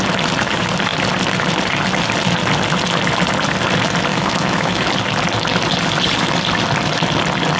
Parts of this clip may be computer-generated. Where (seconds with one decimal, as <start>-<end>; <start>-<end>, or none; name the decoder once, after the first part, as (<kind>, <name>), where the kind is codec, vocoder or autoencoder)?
4.1-4.9 (autoencoder, DAC-VAE)